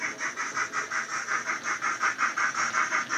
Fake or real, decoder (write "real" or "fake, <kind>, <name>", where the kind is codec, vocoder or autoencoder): real